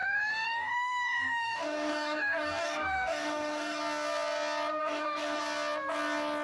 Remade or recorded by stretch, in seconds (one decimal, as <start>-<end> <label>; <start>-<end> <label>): 0.0-3.8 remade; 3.8-4.8 recorded; 4.8-5.4 remade; 5.4-6.4 recorded